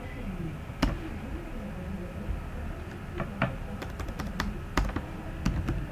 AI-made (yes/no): no